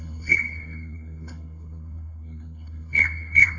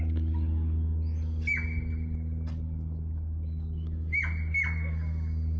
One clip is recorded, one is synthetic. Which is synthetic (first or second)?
first